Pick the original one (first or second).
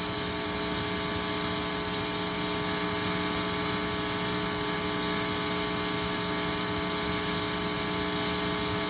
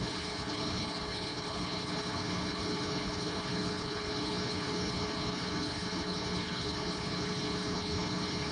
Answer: first